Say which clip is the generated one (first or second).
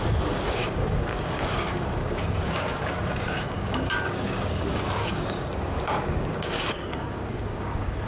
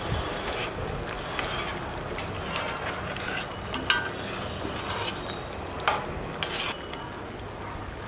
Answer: first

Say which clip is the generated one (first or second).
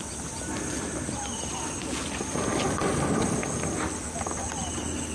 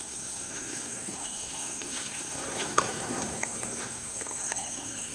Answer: second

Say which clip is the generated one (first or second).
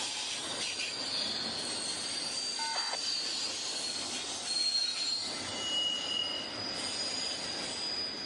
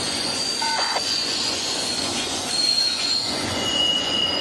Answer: second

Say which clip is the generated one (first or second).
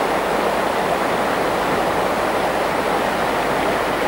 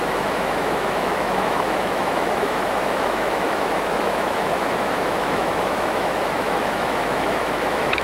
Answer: second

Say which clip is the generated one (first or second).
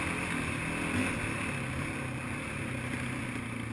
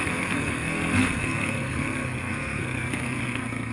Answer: second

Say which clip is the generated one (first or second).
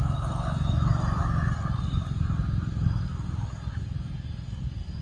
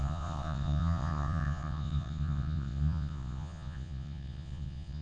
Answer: second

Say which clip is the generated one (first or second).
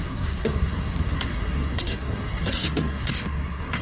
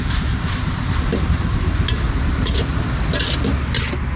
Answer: first